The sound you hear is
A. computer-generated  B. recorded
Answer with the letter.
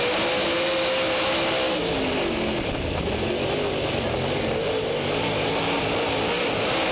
B